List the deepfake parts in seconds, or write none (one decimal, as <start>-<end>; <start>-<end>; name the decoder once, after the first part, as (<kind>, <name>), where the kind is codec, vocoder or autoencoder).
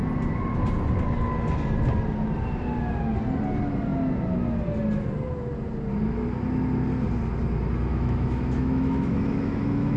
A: 7.9-10.0 (autoencoder, DAC-VAE)